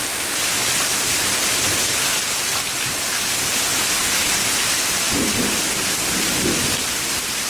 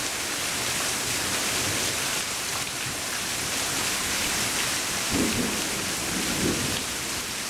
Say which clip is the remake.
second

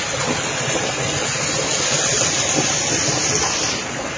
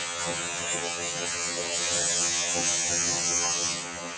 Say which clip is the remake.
second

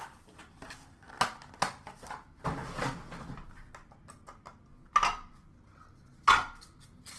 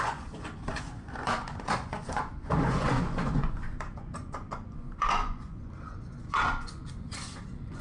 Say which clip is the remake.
second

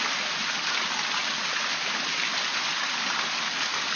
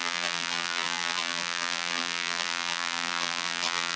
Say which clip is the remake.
second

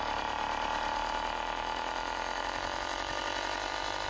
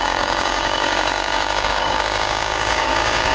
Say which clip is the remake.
second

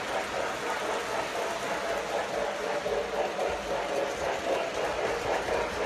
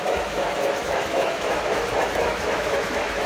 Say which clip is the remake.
second